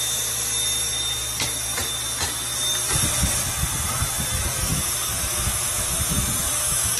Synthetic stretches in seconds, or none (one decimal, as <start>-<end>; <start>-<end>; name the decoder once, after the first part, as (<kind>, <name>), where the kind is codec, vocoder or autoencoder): 4.7-7.0 (autoencoder, DAC-VAE)